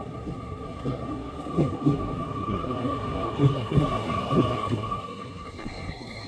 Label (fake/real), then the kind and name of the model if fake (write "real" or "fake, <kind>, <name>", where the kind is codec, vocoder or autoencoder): fake, codec, SNAC